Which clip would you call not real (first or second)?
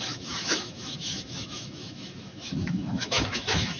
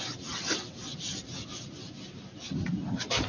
first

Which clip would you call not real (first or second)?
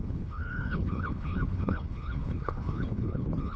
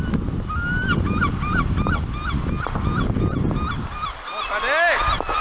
first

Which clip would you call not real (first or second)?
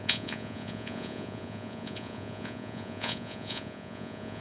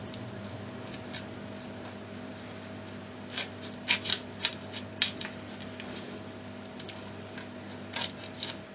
first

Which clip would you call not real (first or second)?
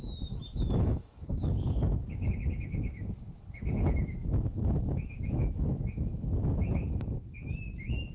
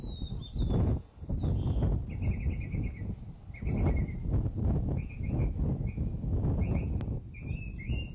first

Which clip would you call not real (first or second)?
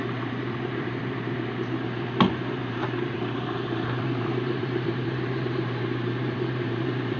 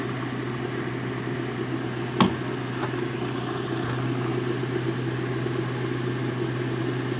first